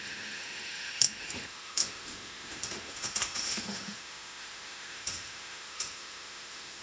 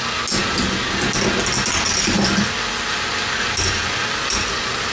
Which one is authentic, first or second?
second